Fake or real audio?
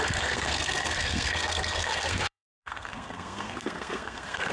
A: fake